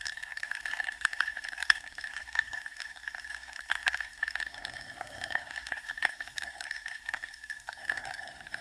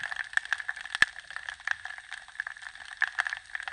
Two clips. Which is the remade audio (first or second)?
first